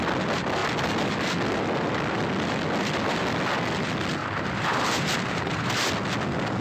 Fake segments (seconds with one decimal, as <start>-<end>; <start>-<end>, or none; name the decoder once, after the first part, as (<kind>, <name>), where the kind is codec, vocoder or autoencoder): 4.2-5.9 (vocoder, BigVGAN v2)